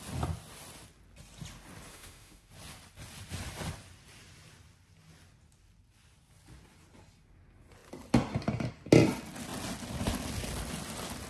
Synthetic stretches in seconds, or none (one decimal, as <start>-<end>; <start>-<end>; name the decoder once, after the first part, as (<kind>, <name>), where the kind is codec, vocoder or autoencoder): 1.9-2.5 (autoencoder, DAC-VAE)